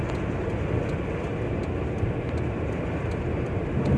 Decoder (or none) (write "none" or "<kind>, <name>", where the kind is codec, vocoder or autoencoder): none